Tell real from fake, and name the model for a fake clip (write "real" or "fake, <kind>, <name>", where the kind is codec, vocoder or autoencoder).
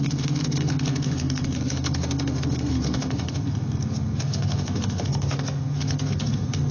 fake, codec, SNAC